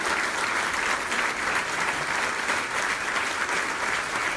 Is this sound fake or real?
real